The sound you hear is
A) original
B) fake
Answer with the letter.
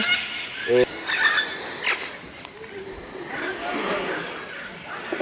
A